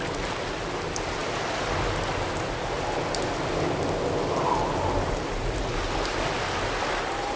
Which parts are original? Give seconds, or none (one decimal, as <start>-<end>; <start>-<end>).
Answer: 0.0-7.4